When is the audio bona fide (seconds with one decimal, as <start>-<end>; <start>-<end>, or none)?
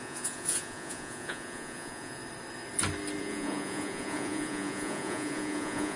2.2-3.2